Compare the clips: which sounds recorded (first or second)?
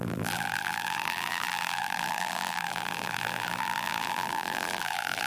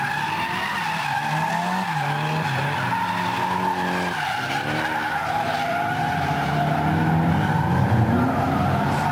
second